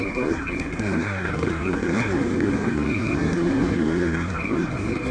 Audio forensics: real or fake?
fake